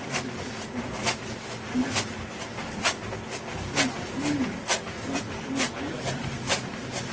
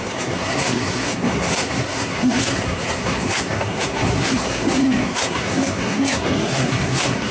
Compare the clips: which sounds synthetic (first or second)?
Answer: second